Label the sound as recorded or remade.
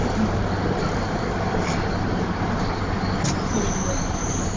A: recorded